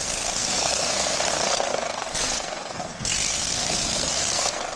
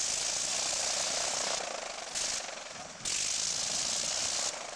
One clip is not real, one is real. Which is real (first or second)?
second